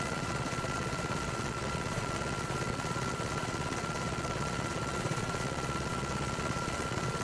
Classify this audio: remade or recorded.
remade